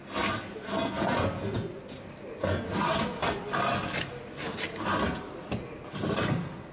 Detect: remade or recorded recorded